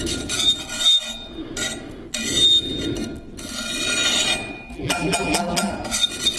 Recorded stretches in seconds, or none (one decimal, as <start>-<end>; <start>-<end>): 0.0-4.7; 5.7-6.4